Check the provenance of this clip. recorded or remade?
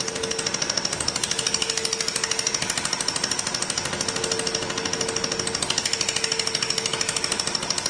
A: recorded